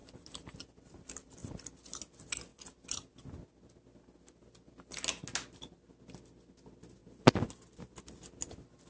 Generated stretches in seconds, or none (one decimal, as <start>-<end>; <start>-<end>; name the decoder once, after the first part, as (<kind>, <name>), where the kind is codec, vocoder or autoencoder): 0.0-0.6 (vocoder, BigVGAN v2); 1.4-2.0; 2.5-3.1